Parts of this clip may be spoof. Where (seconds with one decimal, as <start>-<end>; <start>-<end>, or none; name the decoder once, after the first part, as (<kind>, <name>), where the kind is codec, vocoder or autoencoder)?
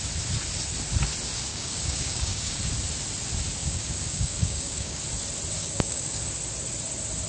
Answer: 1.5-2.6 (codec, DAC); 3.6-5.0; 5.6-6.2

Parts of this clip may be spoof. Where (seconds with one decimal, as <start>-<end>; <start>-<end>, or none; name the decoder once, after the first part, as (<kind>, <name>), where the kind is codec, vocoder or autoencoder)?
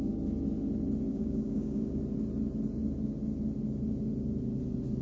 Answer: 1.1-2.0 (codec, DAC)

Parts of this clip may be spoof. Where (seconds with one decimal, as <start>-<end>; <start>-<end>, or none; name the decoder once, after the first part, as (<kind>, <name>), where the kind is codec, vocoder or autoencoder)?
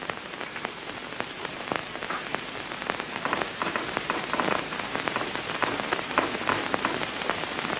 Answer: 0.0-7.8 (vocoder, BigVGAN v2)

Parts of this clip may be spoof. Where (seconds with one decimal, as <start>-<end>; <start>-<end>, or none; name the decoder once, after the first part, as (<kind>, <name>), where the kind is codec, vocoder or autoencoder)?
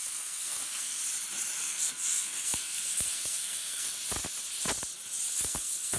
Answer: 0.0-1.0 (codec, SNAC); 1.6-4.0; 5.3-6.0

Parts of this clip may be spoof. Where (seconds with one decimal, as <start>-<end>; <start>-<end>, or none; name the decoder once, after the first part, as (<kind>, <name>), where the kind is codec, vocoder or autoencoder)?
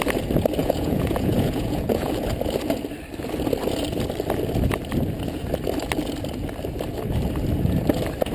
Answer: 0.6-2.1 (vocoder, Vocos)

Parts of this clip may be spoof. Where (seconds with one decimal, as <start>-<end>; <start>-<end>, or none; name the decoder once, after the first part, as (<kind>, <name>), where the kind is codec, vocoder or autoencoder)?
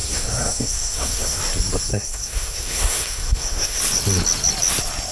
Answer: 0.0-1.4 (codec, SNAC); 1.9-3.8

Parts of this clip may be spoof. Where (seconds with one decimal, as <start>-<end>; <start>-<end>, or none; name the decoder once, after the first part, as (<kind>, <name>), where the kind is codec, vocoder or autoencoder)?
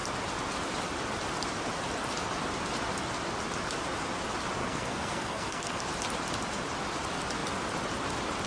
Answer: 4.6-5.8 (codec, SNAC)